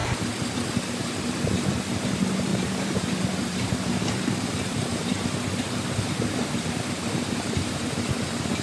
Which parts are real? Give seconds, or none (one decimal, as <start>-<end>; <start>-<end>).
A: 0.0-2.0